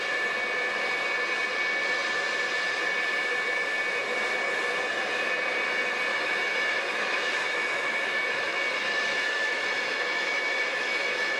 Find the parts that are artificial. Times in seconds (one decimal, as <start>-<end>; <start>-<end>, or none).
6.1-11.4